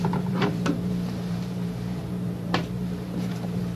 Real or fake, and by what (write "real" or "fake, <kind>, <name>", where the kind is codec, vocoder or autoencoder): fake, vocoder, BigVGAN v2